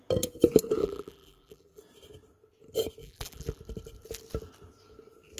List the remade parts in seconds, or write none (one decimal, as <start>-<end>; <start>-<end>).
0.8-1.8; 3.0-3.6